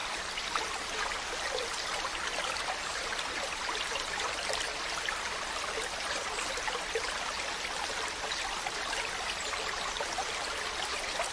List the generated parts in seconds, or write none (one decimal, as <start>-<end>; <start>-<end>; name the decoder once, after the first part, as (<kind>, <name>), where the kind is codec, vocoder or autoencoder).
none